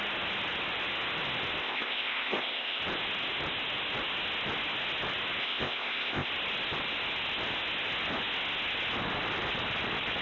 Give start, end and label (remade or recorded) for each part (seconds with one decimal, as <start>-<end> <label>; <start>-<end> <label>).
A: 0.0-1.6 recorded; 1.6-2.8 remade; 2.8-5.4 recorded; 5.4-6.3 remade; 6.3-10.2 recorded